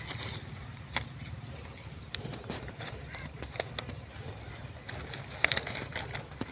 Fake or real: real